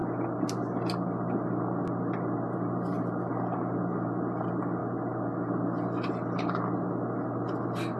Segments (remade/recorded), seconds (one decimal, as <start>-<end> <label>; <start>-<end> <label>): 0.0-8.0 recorded